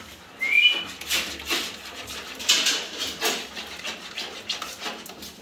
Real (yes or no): yes